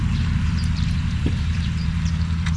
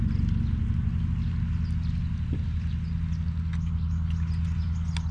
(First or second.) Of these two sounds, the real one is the second